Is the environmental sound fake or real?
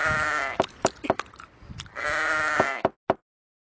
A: real